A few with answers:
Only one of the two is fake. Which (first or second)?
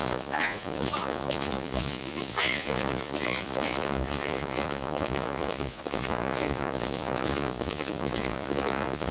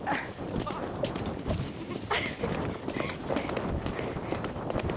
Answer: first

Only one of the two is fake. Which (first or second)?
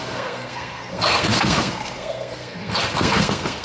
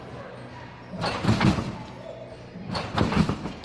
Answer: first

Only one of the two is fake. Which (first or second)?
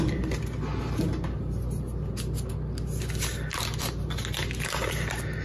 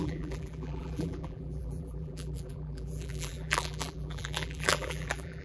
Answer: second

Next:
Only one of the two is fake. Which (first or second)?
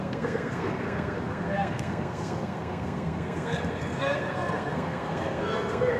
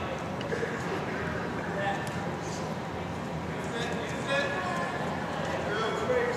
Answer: first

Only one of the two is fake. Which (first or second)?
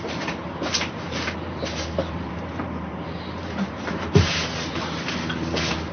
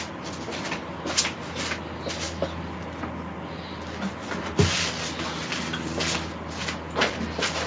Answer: first